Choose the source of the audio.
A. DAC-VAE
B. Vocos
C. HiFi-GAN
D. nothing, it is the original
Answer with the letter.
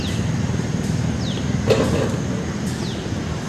D